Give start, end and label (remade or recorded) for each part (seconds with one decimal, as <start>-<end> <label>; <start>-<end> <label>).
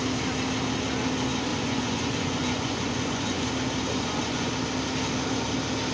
0.0-1.5 recorded; 1.5-3.5 remade; 3.5-3.9 recorded; 3.9-4.5 remade; 4.5-5.9 recorded